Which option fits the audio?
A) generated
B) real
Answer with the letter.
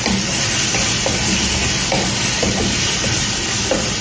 B